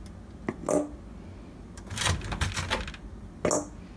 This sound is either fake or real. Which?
real